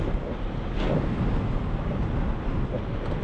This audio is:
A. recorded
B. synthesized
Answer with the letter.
A